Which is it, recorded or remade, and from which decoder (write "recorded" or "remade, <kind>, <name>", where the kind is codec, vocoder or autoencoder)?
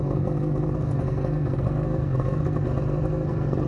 remade, codec, SNAC